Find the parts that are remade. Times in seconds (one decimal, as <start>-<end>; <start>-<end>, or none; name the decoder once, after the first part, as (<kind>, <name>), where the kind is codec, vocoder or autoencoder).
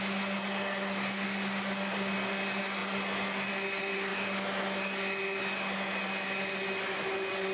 none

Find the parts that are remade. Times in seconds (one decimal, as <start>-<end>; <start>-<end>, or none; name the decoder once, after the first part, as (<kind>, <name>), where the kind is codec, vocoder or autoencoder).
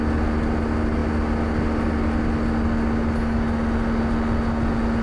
none